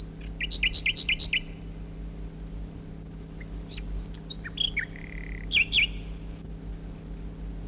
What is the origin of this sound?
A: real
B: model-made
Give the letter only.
A